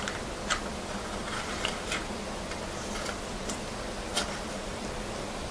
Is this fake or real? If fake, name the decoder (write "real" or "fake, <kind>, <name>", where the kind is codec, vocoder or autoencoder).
real